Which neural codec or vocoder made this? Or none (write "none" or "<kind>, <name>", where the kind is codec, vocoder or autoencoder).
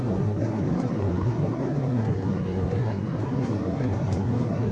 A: codec, SNAC